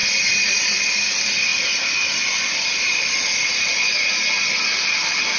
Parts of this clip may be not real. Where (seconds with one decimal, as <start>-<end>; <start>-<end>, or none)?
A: none